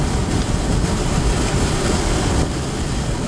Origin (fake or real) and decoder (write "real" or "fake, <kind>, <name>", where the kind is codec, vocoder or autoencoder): real